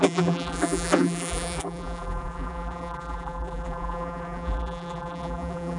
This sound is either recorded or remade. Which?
remade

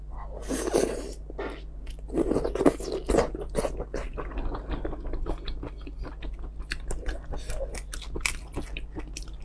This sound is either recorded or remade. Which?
recorded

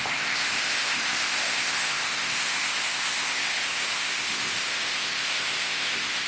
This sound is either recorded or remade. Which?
remade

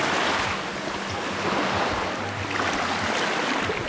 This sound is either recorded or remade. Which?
recorded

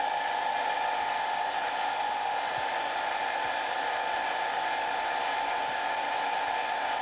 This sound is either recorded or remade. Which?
recorded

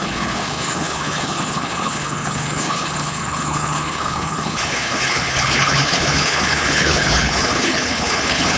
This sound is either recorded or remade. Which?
remade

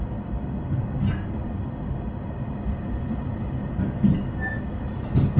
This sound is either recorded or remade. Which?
recorded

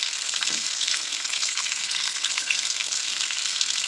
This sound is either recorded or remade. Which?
remade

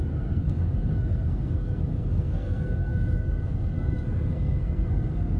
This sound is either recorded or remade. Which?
remade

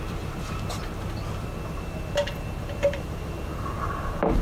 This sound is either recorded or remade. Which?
remade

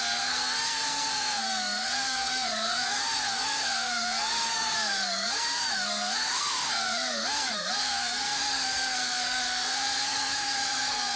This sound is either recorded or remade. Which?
remade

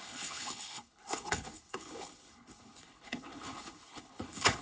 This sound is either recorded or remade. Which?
remade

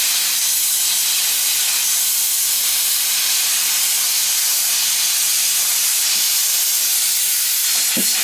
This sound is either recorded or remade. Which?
recorded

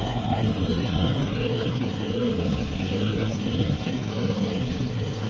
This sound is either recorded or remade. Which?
remade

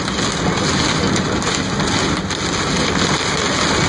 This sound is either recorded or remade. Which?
recorded